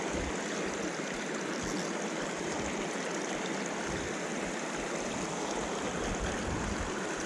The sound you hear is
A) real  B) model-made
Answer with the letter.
A